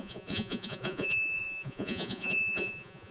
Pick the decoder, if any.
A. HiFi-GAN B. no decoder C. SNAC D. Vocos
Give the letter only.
D